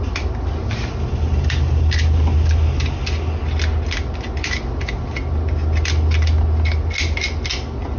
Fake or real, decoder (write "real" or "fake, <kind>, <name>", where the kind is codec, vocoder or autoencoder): real